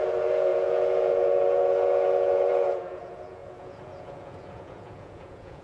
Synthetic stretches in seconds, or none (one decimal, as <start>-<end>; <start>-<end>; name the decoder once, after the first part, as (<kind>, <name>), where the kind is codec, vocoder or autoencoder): 0.0-5.6 (vocoder, Vocos)